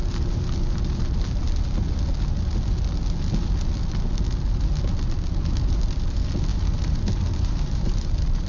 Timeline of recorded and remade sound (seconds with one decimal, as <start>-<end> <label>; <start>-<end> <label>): 0.0-1.4 remade; 1.4-6.5 recorded; 6.5-8.5 remade